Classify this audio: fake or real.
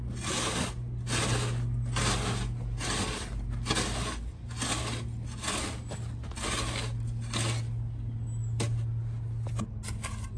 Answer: real